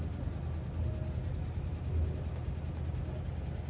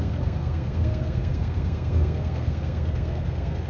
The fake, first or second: second